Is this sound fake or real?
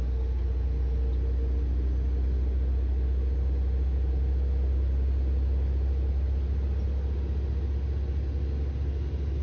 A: real